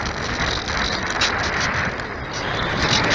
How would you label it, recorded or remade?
recorded